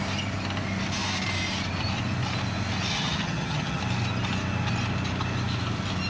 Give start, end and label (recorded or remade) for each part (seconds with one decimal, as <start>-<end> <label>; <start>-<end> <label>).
0.0-2.9 recorded; 2.9-3.8 remade; 3.8-6.1 recorded